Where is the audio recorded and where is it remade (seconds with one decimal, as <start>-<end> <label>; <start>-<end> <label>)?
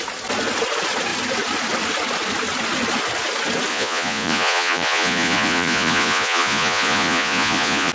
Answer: 0.0-3.7 recorded; 3.7-7.9 remade